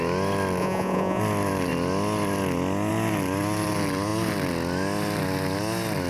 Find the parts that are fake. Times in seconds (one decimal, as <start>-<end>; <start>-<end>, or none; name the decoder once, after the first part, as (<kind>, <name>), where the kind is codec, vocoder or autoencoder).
0.6-1.2 (vocoder, Vocos)